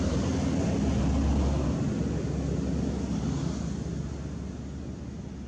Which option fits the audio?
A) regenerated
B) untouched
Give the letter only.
B